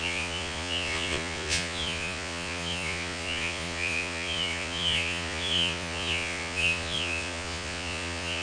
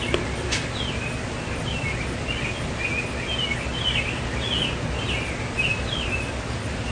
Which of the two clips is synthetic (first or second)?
first